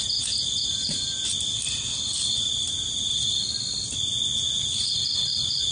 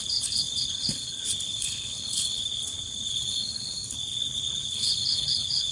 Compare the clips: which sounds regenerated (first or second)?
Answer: second